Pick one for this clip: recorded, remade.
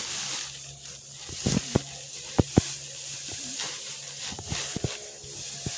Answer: recorded